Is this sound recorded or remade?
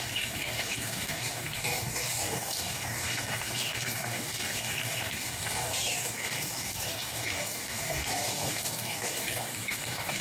remade